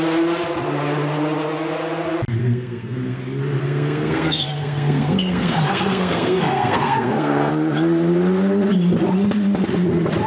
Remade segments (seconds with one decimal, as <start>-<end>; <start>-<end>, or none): 2.4-3.2; 3.6-7.5